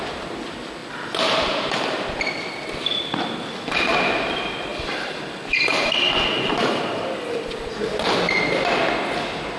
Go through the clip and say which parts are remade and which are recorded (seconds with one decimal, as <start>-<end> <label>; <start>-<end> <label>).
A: 0.0-0.8 recorded; 0.8-3.7 remade; 3.7-4.7 recorded; 4.7-7.7 remade; 7.7-9.6 recorded